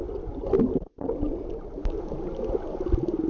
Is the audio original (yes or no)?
yes